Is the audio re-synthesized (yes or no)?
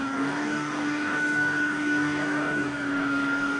yes